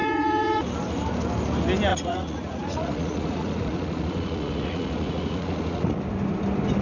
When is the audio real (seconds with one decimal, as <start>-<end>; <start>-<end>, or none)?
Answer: 0.6-1.9; 6.0-6.8